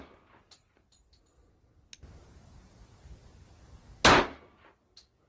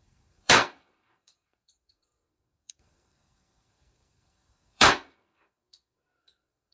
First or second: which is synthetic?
second